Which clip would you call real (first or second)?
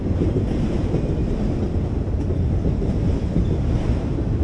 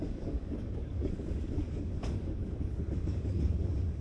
first